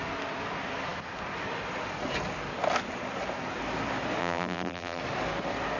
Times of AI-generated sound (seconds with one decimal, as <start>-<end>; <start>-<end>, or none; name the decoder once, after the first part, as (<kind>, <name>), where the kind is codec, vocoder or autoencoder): 4.2-5.0 (vocoder, BigVGAN v2)